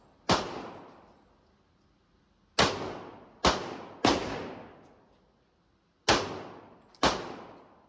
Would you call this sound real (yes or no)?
yes